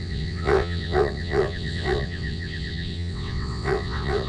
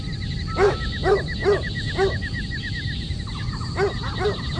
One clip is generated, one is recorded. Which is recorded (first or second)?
second